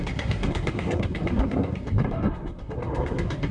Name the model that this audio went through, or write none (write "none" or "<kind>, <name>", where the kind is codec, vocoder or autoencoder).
codec, SNAC